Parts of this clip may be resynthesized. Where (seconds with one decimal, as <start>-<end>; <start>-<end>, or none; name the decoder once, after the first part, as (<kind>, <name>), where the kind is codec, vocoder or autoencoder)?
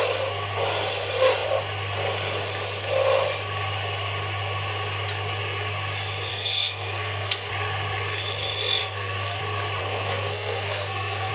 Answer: 6.3-7.5 (codec, SNAC); 8.8-9.4; 9.8-11.3